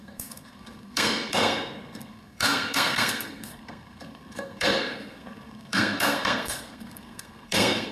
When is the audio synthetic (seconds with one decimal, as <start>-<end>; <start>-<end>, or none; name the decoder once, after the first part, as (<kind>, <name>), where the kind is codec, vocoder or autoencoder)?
0.0-7.9 (codec, SNAC)